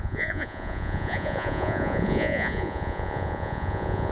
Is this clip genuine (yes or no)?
no